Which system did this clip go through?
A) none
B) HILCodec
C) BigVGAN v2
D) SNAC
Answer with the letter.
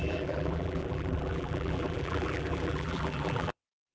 C